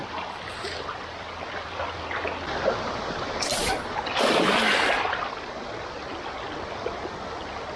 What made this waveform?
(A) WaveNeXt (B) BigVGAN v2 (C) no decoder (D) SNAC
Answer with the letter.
C